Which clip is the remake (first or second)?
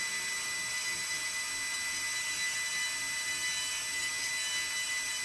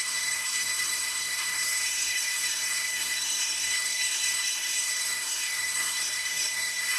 second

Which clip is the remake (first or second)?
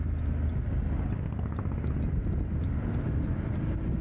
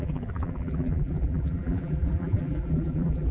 second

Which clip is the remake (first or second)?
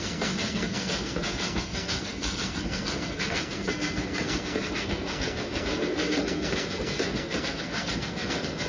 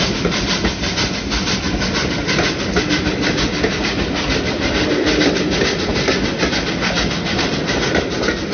first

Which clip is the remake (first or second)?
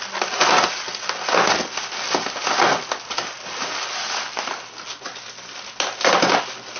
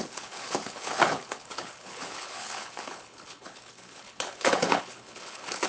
second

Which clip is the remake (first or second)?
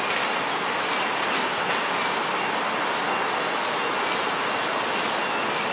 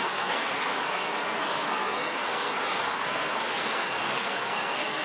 second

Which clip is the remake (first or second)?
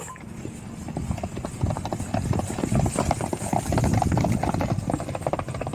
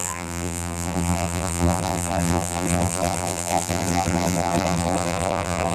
second